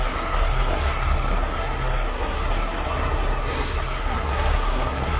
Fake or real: fake